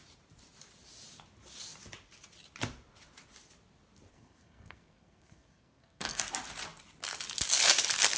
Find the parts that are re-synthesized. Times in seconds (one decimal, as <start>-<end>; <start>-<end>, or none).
4.1-6.2